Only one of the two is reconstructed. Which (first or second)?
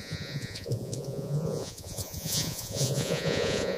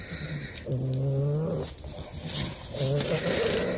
first